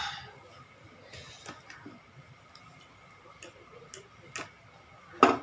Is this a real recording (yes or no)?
yes